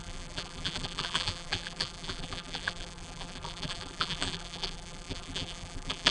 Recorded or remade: remade